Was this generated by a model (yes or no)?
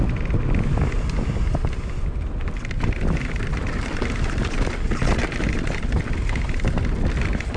no